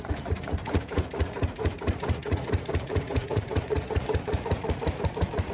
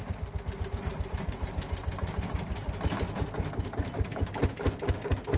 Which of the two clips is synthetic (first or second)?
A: first